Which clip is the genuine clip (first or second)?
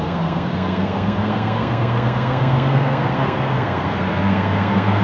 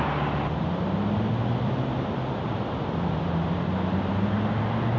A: second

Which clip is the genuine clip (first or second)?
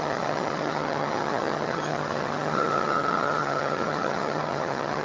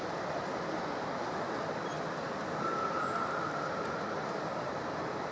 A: second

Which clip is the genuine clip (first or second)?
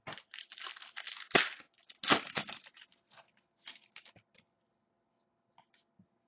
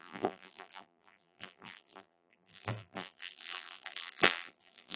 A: first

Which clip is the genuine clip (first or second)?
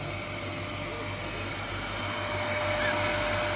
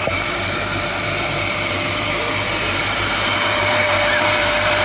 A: first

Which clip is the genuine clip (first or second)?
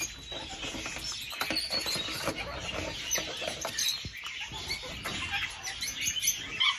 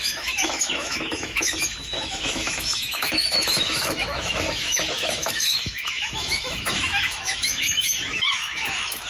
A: first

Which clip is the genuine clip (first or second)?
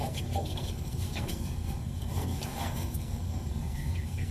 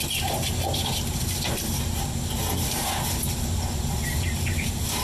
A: second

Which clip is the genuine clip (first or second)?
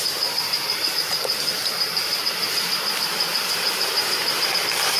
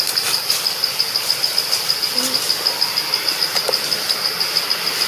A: second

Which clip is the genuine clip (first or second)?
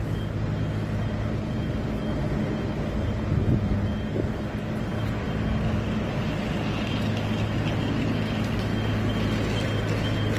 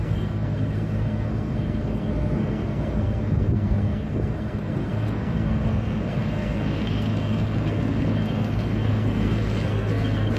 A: first